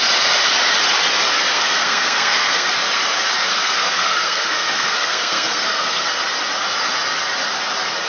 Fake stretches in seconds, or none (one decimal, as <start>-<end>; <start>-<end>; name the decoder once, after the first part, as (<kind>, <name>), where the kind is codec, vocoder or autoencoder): 1.5-2.7 (codec, SNAC); 3.5-6.1